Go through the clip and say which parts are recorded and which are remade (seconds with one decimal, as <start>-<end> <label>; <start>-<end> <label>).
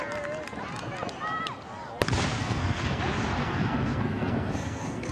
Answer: 0.0-2.4 recorded; 2.4-3.0 remade; 3.0-3.4 recorded; 3.4-5.1 remade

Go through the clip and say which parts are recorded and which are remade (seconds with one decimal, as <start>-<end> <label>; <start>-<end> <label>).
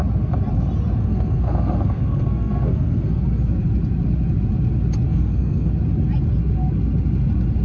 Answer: 0.0-1.0 recorded; 1.0-3.2 remade; 3.2-5.1 recorded; 5.1-5.7 remade; 5.7-7.6 recorded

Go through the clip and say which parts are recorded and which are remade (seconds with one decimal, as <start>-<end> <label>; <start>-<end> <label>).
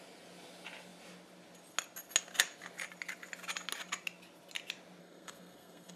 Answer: 0.0-5.0 recorded; 5.0-6.0 remade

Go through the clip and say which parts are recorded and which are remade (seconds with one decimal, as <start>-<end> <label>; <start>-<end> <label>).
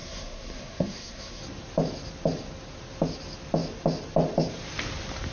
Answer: 0.0-1.4 remade; 1.4-5.3 recorded